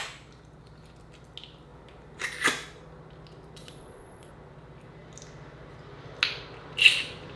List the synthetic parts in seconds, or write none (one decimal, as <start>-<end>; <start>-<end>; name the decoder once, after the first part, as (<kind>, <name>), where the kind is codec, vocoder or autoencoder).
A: 3.6-4.3 (vocoder, Vocos)